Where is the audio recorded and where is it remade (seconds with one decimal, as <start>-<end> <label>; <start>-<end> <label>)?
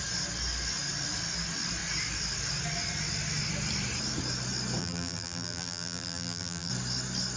0.0-4.8 recorded; 4.8-6.7 remade; 6.7-7.4 recorded